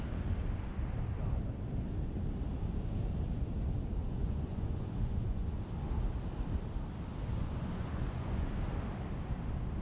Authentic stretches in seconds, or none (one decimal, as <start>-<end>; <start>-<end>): 0.0-4.0; 5.6-7.4; 8.5-9.8